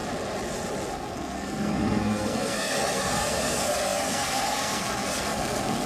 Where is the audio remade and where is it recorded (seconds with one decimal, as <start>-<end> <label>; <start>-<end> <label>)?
0.0-0.9 recorded; 0.9-5.9 remade